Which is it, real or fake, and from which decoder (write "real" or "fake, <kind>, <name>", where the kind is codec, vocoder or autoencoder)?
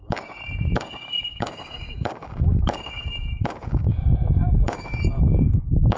fake, codec, DAC